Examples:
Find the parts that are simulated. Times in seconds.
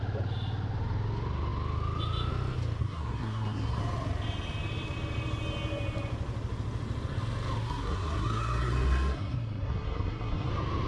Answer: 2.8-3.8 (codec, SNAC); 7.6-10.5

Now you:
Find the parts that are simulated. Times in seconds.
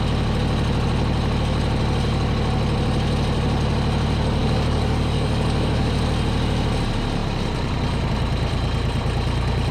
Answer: 4.4-5.9 (codec, DAC)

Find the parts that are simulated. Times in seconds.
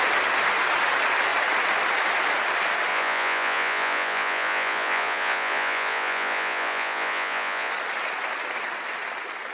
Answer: 2.9-7.7 (vocoder, Vocos)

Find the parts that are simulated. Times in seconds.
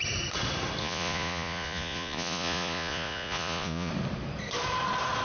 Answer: 0.8-3.9 (vocoder, Vocos)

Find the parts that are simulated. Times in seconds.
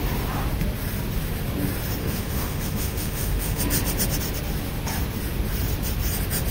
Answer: 2.0-3.6 (autoencoder, DAC-VAE)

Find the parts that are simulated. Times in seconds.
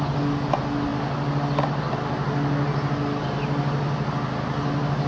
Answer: none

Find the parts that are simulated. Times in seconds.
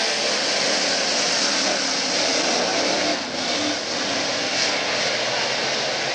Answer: none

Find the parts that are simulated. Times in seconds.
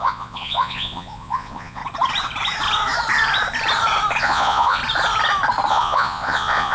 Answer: 0.0-1.8 (vocoder, Vocos); 4.2-4.8; 5.7-6.7